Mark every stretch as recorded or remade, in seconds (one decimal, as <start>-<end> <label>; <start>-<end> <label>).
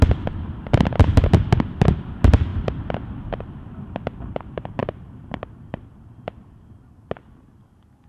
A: 0.0-0.6 recorded; 0.6-1.5 remade; 1.5-2.5 recorded; 2.5-3.7 remade; 3.7-4.8 recorded; 4.8-6.6 remade; 6.6-8.1 recorded